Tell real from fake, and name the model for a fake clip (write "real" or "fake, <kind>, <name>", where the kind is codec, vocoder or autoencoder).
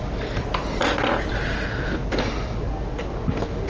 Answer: real